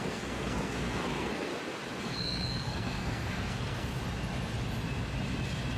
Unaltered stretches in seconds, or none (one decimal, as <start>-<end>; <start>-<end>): 1.5-2.0; 3.9-5.8